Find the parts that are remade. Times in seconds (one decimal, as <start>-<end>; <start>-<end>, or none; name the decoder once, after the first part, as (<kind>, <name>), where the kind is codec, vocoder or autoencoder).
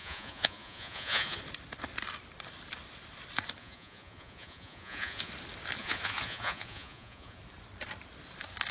0.0-1.4 (vocoder, Vocos); 3.6-5.3; 5.8-7.4